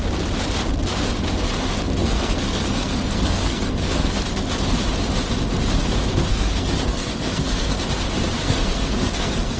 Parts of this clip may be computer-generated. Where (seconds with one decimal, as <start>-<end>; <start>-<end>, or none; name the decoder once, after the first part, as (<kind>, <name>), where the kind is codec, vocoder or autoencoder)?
2.0-4.1 (codec, SNAC); 6.3-7.8; 8.4-9.6